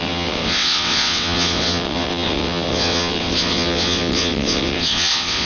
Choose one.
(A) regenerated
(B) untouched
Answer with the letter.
A